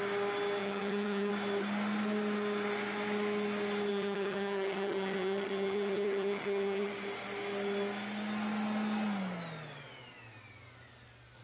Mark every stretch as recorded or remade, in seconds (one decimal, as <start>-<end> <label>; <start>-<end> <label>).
0.0-0.6 recorded; 0.6-1.3 remade; 1.3-3.9 recorded; 3.9-6.9 remade; 6.9-11.4 recorded